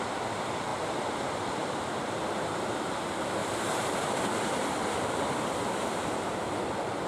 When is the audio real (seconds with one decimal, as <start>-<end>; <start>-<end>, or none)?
0.0-1.6; 2.6-3.4; 4.5-7.1